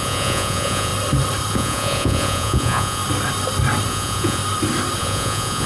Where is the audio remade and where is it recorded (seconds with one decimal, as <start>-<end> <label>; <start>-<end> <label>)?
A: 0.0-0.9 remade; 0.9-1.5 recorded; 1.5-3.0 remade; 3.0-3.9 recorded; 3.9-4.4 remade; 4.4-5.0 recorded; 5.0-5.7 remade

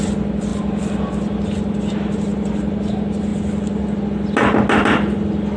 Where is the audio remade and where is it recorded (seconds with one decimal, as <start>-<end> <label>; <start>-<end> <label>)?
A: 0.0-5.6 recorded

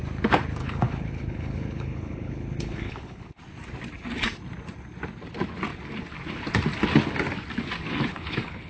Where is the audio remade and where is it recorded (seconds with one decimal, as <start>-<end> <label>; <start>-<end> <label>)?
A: 0.0-0.6 recorded; 0.6-3.4 remade; 3.4-8.1 recorded; 8.1-8.7 remade

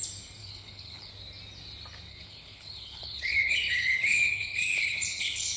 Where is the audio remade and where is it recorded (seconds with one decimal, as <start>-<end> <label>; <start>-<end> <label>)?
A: 0.0-0.4 recorded; 0.4-1.1 remade; 1.1-2.1 recorded; 2.1-5.6 remade

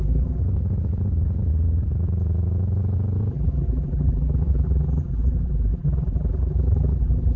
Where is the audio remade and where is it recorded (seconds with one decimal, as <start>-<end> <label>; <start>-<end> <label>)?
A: 0.0-0.4 remade; 0.4-3.3 recorded; 3.3-7.4 remade

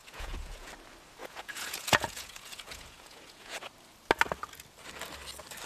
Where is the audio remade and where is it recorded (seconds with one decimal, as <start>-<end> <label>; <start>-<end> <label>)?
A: 0.0-0.7 remade; 0.7-1.2 recorded; 1.2-3.6 remade; 3.6-5.7 recorded

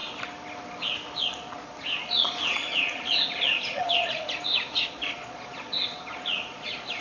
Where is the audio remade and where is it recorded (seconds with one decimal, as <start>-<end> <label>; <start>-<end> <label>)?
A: 0.0-1.2 recorded; 1.2-7.0 remade

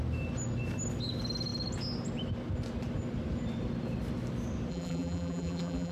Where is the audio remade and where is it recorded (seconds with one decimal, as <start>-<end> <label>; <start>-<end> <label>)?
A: 0.0-4.7 recorded; 4.7-5.9 remade